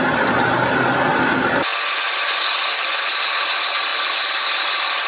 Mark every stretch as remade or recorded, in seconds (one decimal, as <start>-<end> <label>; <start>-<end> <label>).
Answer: 0.0-5.1 recorded